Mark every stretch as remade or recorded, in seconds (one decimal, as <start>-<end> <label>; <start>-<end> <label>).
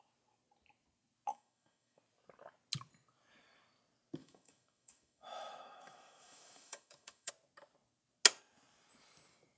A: 0.0-1.3 recorded; 1.3-2.0 remade; 2.0-4.2 recorded; 4.2-7.3 remade; 7.3-9.6 recorded